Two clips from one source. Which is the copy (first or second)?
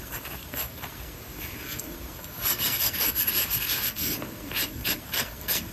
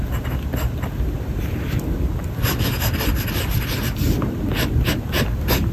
first